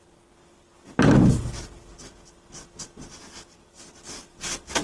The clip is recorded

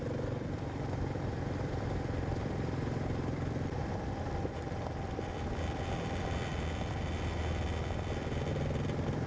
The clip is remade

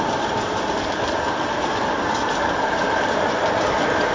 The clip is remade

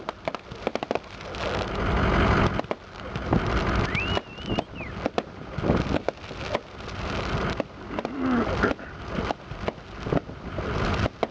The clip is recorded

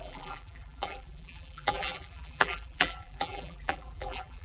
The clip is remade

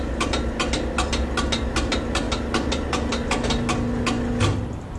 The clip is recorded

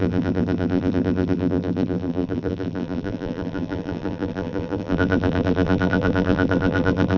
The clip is remade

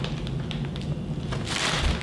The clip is recorded